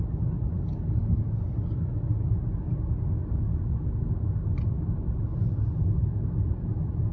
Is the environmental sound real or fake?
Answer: real